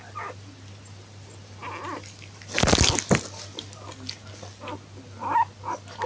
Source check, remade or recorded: recorded